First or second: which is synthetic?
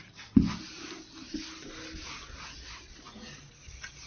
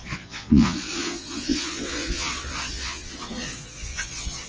second